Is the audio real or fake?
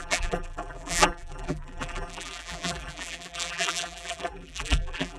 fake